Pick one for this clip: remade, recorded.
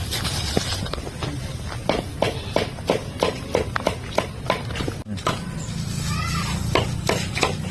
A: recorded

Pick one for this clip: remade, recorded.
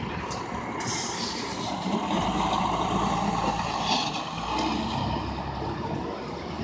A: recorded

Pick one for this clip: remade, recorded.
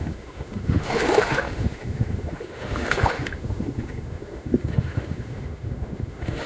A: remade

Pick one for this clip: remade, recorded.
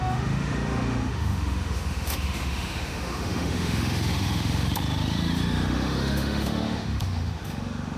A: remade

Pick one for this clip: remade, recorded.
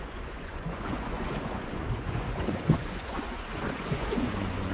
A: remade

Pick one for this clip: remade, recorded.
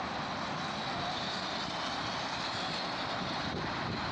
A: recorded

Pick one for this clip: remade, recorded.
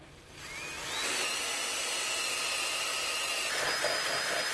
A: recorded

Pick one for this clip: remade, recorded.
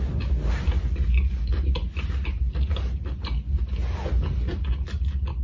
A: recorded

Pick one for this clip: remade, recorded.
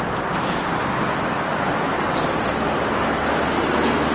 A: recorded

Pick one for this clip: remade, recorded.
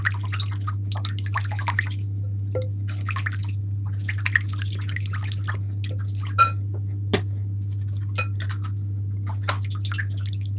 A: recorded